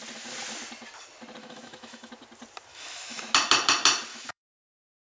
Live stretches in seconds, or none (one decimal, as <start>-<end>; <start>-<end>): 0.0-1.4; 2.1-2.7; 3.2-4.1